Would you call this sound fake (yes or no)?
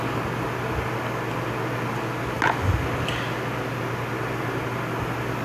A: no